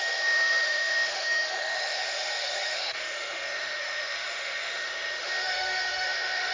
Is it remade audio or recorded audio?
remade